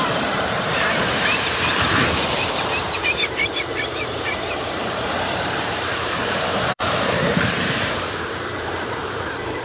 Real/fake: fake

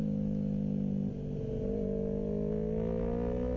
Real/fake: real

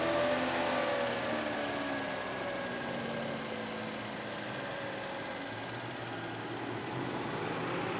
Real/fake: real